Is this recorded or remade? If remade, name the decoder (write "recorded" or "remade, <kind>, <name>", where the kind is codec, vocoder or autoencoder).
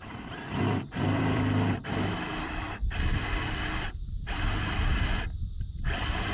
remade, vocoder, BigVGAN v2